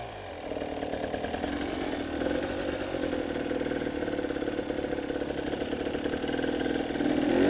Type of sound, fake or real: real